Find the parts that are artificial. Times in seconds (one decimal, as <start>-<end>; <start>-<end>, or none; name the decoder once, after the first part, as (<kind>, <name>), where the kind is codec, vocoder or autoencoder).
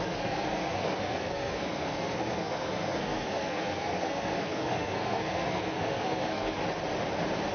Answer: 0.0-6.6 (codec, SNAC)